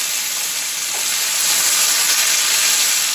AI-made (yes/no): no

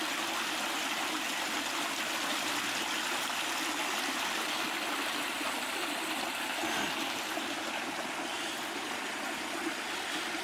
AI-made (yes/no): no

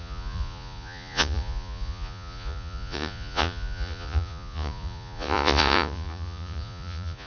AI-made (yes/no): yes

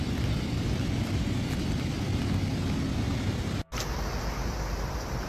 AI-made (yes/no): no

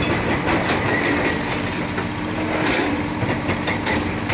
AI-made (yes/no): no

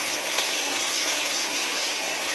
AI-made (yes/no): yes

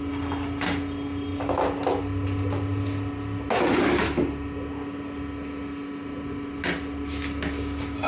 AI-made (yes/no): no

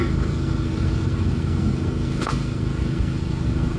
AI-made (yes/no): yes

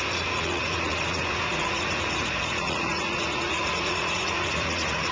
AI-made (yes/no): yes